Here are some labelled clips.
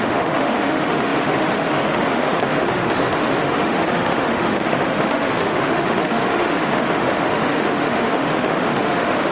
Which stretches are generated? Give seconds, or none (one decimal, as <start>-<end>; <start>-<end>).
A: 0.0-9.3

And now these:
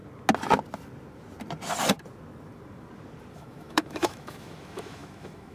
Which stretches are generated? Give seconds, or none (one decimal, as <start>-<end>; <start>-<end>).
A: 3.3-5.5

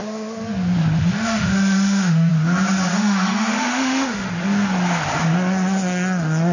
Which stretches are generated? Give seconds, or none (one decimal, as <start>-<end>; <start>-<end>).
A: 1.0-2.3; 2.9-4.3